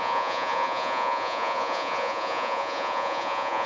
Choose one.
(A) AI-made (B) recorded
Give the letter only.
A